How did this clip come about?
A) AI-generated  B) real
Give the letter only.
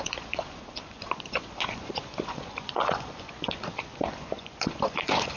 A